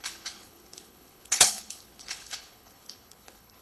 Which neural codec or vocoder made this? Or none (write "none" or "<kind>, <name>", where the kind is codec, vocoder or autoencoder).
codec, HILCodec